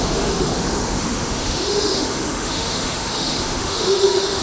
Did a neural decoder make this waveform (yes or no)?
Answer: yes